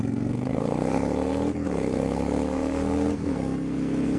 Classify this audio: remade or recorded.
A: remade